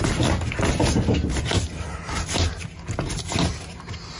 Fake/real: real